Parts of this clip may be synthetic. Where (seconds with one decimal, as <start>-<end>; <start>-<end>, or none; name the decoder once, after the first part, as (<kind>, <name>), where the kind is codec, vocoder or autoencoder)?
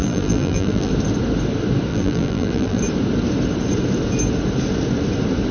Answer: 0.0-0.9 (vocoder, BigVGAN v2); 1.9-2.8